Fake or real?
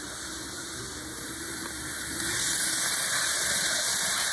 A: fake